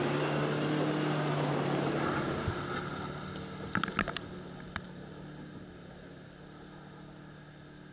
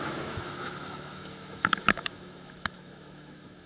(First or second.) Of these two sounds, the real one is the first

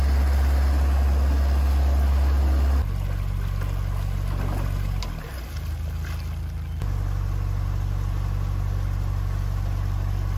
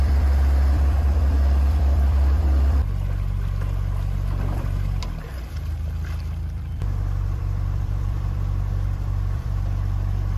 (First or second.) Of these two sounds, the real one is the first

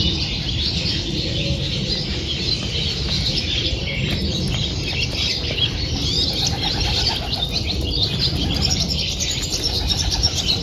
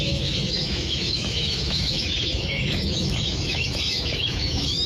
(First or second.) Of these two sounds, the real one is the first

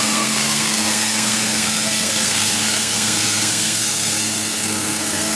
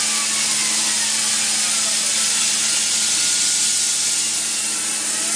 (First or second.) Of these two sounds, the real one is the second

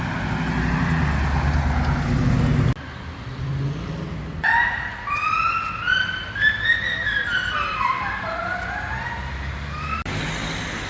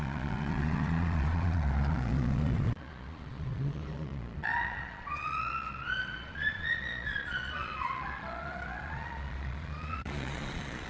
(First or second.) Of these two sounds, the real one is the first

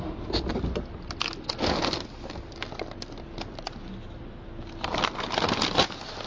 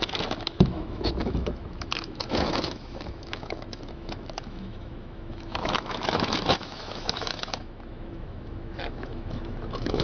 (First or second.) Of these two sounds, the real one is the first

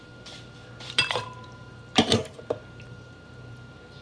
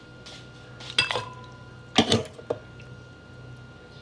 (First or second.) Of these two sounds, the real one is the second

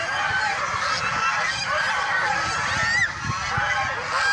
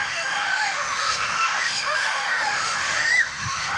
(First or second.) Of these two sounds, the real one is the first